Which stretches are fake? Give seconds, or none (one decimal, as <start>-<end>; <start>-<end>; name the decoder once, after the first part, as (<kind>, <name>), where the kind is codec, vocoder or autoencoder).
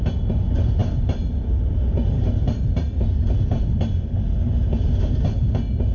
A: none